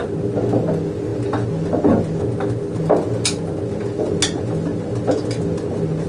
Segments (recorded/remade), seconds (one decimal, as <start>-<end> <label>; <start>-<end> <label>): 0.0-6.1 recorded